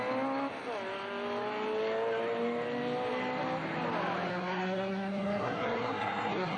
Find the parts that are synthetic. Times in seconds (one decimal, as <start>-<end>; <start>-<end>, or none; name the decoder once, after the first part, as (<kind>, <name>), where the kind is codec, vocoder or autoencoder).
4.3-6.6 (codec, SNAC)